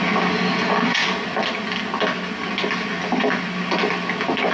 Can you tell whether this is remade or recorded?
recorded